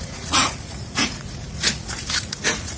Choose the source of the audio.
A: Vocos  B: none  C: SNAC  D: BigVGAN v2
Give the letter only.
A